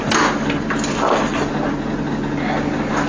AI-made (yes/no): no